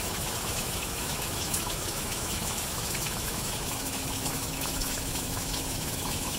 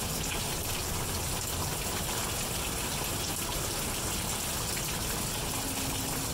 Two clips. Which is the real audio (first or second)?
second